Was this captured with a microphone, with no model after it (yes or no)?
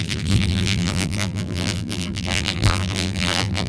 no